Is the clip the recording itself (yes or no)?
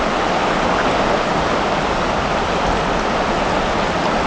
yes